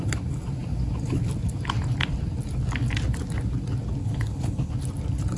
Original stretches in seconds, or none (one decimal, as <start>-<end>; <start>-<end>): 0.0-4.0; 4.7-5.4

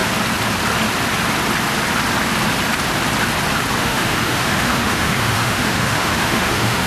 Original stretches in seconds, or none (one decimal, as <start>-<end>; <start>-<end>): 0.0-3.8